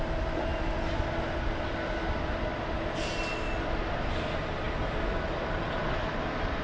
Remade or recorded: recorded